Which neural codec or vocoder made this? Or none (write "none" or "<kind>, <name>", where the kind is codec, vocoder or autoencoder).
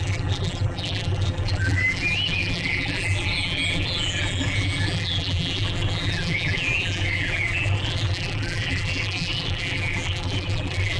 vocoder, BigVGAN v2